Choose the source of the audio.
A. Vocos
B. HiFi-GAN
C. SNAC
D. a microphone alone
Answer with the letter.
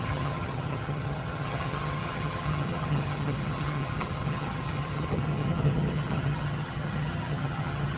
B